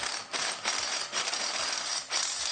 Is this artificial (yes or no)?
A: no